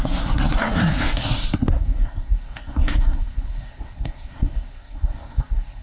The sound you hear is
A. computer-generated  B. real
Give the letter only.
A